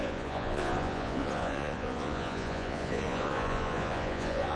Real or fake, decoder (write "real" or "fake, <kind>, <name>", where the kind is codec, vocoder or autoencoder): fake, vocoder, Vocos